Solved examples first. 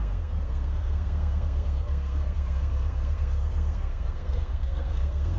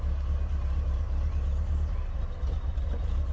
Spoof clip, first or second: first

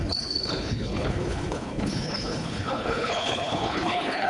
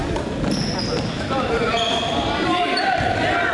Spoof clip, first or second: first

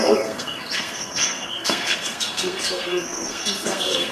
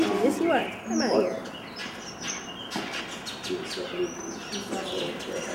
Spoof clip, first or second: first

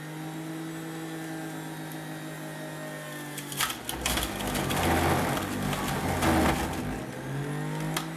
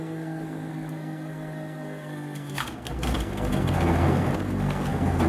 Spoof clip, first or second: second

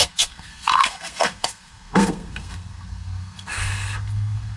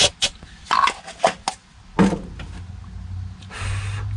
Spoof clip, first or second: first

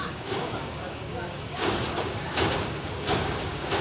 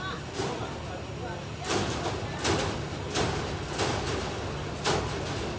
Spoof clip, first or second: first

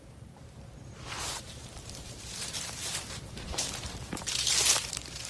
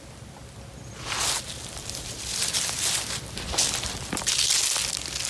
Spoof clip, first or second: first